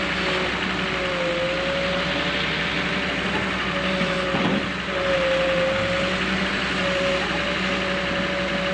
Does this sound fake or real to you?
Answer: real